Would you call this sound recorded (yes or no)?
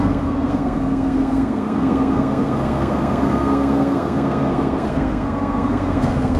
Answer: no